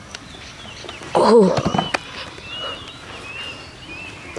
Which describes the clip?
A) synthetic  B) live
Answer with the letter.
B